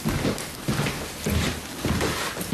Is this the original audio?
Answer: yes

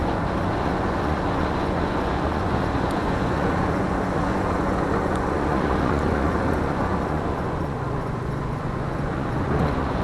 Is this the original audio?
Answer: no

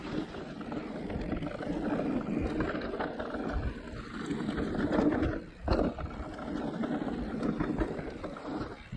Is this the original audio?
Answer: yes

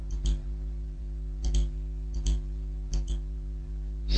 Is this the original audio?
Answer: no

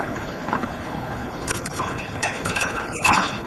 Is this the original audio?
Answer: no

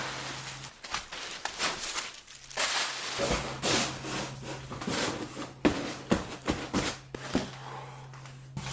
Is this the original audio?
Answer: yes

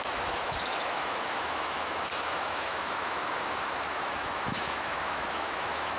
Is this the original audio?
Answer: no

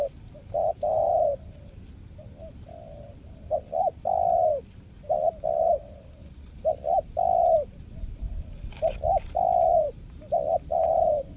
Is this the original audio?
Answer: no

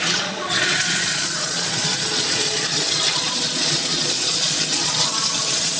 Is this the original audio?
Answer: no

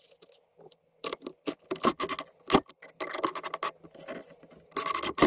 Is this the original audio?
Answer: yes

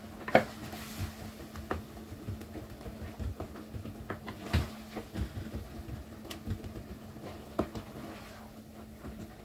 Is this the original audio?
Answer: yes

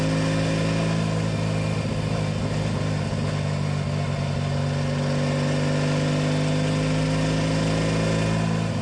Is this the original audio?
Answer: yes